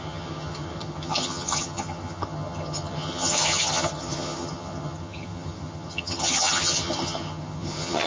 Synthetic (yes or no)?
yes